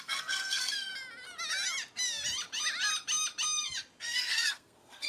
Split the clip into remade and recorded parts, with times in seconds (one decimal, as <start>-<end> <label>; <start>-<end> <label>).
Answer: 0.0-0.9 remade; 0.9-4.0 recorded; 4.0-5.1 remade